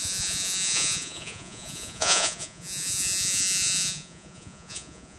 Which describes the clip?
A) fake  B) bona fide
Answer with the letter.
A